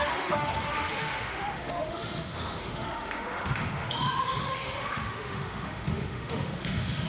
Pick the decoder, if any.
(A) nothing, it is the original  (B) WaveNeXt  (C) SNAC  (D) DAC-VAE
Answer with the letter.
D